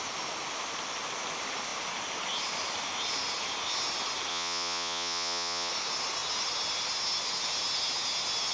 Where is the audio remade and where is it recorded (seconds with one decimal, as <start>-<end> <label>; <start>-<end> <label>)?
0.0-4.3 recorded; 4.3-5.7 remade; 5.7-8.5 recorded